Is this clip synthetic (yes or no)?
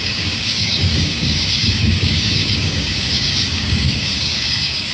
yes